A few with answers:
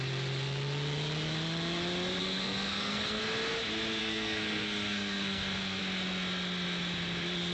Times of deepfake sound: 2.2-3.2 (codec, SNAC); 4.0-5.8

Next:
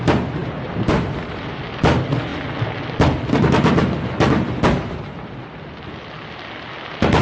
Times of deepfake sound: 0.4-1.6 (vocoder, BigVGAN v2)